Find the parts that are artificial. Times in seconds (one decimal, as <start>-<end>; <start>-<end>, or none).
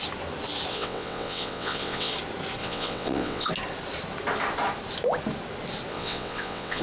0.7-2.1; 2.6-3.5; 5.9-6.8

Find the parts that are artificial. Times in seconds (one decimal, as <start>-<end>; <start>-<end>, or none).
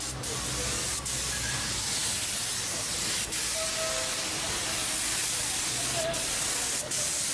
none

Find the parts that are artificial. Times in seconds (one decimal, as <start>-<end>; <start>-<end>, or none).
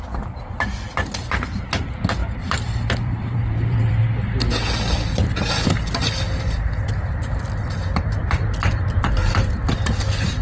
2.2-4.0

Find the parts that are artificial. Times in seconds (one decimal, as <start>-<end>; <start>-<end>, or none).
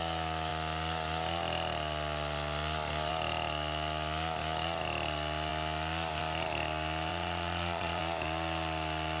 7.1-8.0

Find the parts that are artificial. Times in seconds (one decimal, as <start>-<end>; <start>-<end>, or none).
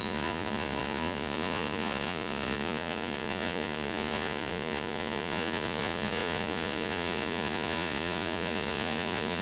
0.0-9.4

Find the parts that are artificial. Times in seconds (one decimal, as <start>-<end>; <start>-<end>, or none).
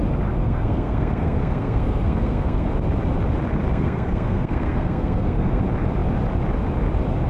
0.4-2.7; 3.7-5.6